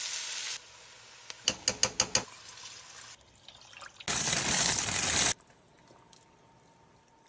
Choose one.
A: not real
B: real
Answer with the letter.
B